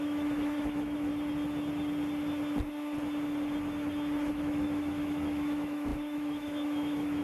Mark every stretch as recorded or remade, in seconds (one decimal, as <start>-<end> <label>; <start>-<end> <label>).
0.0-1.1 remade; 1.1-4.3 recorded; 4.3-7.2 remade